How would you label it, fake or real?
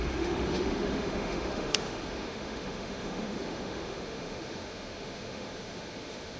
fake